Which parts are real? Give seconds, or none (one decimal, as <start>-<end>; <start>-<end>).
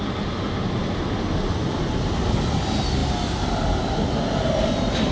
0.0-5.1